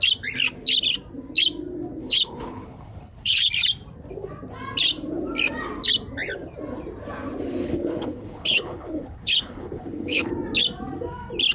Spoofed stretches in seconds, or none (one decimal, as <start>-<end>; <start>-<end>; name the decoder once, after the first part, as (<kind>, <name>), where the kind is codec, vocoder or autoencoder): 2.0-3.5 (codec, HILCodec); 7.6-10.3

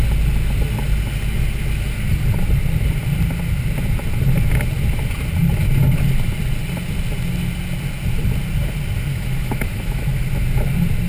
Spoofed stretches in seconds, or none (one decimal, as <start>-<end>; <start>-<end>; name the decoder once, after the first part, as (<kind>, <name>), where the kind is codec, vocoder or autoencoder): 9.1-10.1 (autoencoder, DAC-VAE)